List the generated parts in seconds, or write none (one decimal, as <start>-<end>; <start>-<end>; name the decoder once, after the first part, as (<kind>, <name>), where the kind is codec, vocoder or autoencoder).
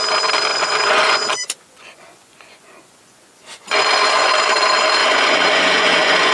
0.5-4.3 (vocoder, Vocos); 5.0-6.3